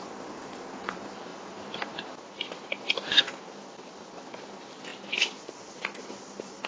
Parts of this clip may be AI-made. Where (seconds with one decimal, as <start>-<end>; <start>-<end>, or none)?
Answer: none